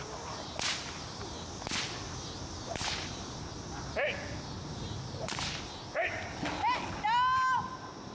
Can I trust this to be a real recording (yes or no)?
yes